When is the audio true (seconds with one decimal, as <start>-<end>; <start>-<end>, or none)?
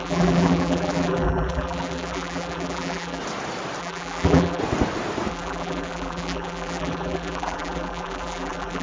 3.2-3.8; 4.6-5.3